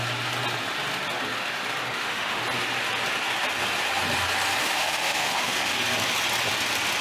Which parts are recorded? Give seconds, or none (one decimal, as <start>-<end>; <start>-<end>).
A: 0.0-1.9; 2.4-4.6; 5.8-7.0